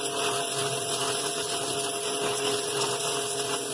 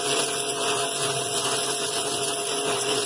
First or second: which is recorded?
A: first